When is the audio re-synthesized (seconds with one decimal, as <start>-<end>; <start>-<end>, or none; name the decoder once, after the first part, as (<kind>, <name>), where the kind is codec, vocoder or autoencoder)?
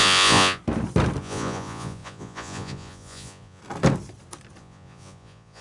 0.0-0.6 (vocoder, Vocos); 1.2-3.6; 4.6-5.6